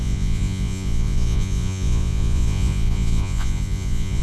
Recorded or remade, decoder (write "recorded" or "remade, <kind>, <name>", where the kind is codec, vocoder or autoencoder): remade, vocoder, Vocos